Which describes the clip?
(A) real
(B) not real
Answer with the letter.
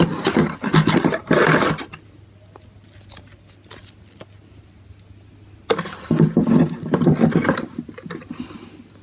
A